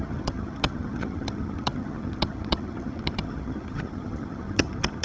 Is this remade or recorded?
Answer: remade